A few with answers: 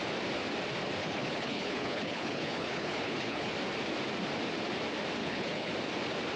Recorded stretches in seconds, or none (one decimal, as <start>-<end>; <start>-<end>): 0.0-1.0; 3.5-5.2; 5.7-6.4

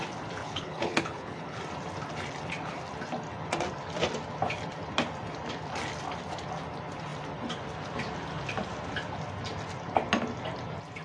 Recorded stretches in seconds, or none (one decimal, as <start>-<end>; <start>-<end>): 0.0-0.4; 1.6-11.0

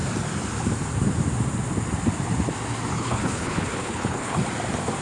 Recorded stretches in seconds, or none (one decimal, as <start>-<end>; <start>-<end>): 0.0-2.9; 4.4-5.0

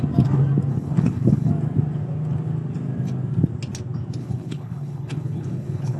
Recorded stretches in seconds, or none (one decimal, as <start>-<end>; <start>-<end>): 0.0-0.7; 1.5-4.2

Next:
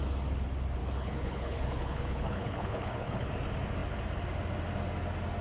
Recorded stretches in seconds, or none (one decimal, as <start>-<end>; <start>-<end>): 0.0-0.8; 3.3-5.4

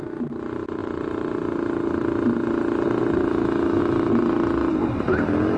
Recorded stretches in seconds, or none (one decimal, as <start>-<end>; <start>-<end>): 0.0-5.6

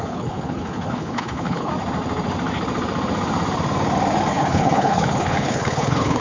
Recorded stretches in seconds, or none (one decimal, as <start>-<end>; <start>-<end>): 1.7-4.3